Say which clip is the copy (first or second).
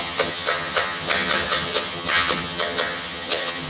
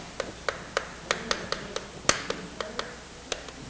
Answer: first